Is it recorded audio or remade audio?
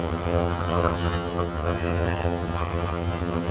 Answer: remade